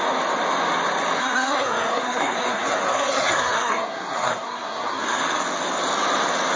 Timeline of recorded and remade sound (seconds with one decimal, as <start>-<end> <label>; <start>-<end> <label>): 0.0-1.2 recorded; 1.2-5.2 remade; 5.2-6.6 recorded